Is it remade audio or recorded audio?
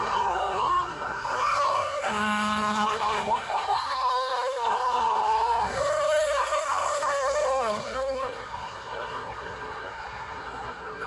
remade